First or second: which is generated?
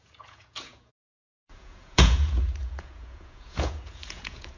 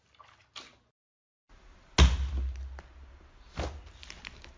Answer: first